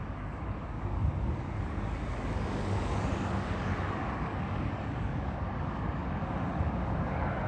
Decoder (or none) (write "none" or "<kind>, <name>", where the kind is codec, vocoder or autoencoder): codec, DAC